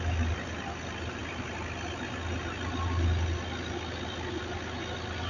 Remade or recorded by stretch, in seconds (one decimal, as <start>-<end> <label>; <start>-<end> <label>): 0.0-5.3 recorded